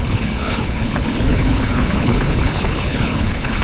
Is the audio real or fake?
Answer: fake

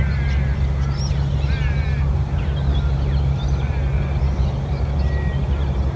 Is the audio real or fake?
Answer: real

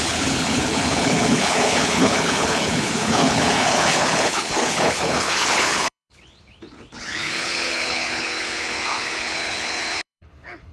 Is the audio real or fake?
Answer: fake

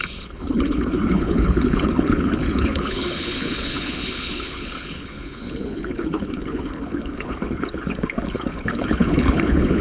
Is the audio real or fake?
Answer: fake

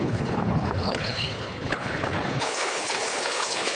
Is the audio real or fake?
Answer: fake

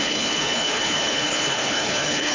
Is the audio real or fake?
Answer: fake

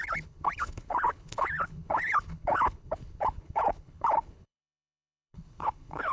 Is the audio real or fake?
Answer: fake